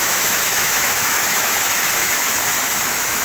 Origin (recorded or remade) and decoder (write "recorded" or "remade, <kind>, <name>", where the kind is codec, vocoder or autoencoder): remade, autoencoder, DAC-VAE